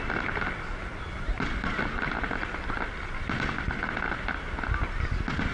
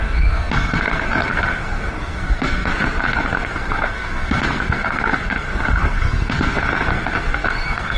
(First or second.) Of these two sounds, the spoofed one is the second